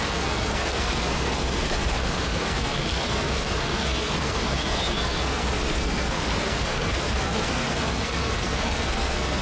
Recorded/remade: remade